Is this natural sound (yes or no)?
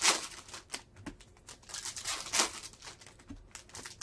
yes